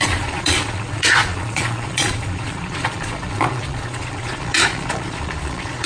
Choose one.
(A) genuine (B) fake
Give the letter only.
B